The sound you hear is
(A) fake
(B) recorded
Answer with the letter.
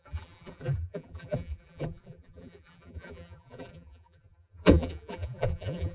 A